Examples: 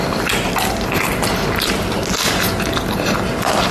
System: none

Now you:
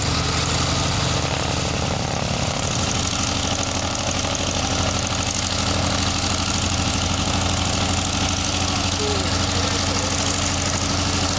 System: none